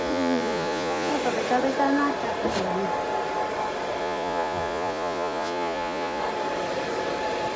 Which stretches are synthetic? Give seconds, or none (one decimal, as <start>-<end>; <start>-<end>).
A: 0.0-1.1; 4.0-6.2